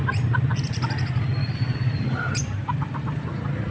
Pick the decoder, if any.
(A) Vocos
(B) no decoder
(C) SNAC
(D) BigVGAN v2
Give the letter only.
D